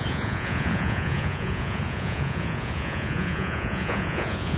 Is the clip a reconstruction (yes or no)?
yes